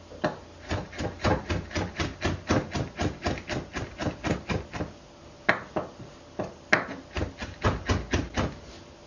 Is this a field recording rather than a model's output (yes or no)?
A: yes